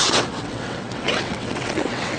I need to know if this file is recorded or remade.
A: remade